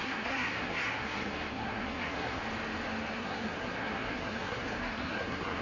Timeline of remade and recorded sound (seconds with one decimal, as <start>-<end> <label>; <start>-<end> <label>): 0.0-2.4 remade; 2.4-3.1 recorded; 3.1-5.6 remade